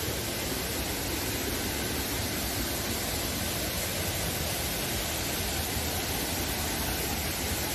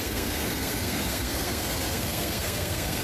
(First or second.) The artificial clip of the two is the second